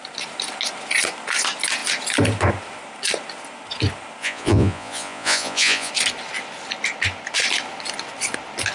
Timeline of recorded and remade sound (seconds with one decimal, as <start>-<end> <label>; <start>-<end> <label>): 0.0-4.2 recorded; 4.2-5.9 remade; 5.9-8.7 recorded